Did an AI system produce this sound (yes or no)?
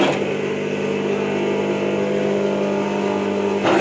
no